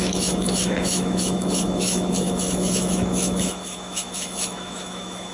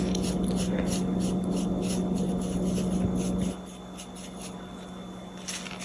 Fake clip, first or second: first